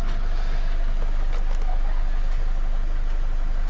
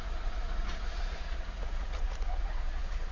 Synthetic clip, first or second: second